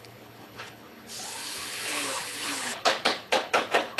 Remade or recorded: remade